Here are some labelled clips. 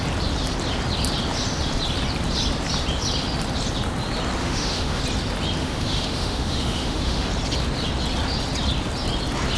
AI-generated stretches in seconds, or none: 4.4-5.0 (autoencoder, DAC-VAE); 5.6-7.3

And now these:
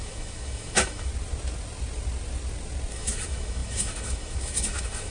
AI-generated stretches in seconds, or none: 0.0-1.1 (autoencoder, DAC-VAE); 2.9-5.1

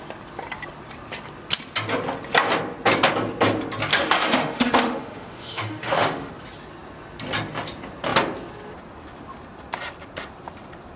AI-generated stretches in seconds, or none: 3.9-6.3 (autoencoder, DAC-VAE)

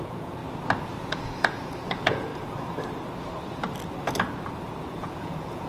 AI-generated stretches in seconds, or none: 0.0-0.4 (vocoder, Vocos); 1.0-2.3; 4.8-5.7